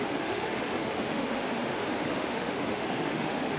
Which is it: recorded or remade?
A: remade